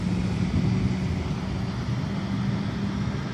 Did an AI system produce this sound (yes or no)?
no